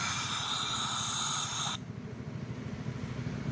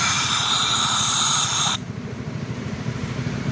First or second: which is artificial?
second